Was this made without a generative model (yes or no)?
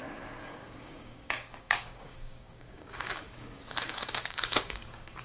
no